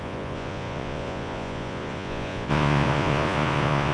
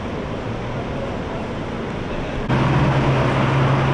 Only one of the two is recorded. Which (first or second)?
second